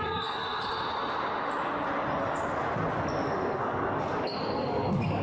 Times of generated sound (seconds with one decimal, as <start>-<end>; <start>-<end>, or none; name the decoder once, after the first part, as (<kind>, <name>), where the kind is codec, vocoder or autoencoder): 0.0-0.4 (codec, DAC); 3.0-5.2

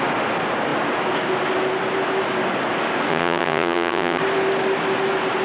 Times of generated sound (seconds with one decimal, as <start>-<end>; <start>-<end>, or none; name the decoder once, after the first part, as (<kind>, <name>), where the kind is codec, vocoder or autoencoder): 3.1-4.2 (vocoder, HiFi-GAN)

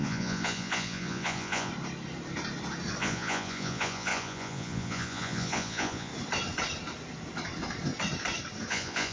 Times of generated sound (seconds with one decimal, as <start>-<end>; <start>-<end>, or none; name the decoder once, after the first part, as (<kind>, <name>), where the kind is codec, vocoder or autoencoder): 0.0-1.7 (vocoder, Vocos); 3.0-6.1; 8.7-9.1

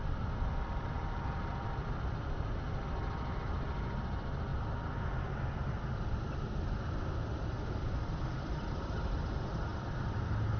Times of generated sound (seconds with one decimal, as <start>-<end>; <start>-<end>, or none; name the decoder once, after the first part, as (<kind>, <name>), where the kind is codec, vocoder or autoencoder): none

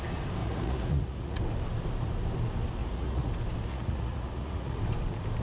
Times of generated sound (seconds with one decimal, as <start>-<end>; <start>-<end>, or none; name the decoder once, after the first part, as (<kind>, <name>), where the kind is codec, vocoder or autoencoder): 0.4-1.4 (vocoder, Vocos); 2.8-3.3; 3.7-4.8

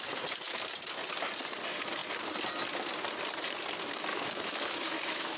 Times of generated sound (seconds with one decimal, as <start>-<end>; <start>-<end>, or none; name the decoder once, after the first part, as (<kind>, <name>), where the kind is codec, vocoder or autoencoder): 4.1-5.4 (autoencoder, DAC-VAE)